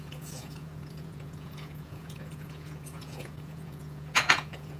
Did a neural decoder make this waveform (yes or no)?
yes